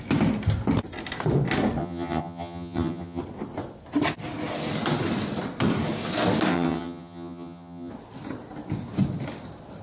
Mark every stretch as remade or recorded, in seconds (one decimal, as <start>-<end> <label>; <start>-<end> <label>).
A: 0.0-1.8 recorded; 1.8-3.2 remade; 3.2-6.5 recorded; 6.5-7.9 remade; 7.9-9.8 recorded